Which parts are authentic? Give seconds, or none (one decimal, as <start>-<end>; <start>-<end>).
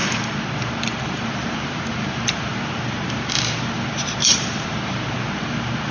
0.0-1.0